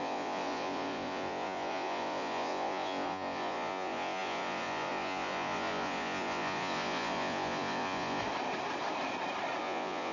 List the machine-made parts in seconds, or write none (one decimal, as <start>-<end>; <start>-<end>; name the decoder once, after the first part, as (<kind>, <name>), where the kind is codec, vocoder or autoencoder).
0.0-8.2 (vocoder, Vocos); 9.6-10.1